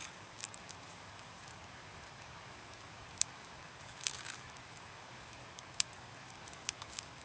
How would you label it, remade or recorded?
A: remade